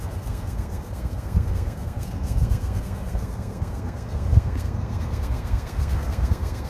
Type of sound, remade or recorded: remade